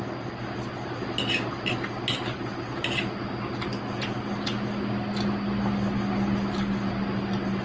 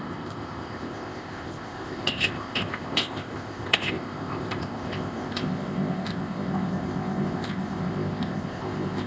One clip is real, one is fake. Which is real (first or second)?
first